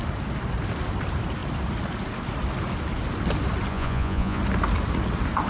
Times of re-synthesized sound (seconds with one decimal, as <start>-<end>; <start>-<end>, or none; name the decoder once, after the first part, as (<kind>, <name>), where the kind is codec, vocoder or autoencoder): 3.7-4.4 (vocoder, Vocos)

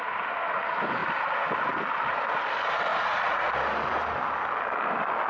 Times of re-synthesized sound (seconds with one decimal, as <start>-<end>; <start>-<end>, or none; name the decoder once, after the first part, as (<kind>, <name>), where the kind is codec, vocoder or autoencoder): 2.9-3.5 (vocoder, Vocos)